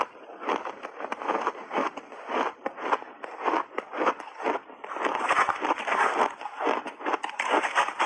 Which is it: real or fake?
real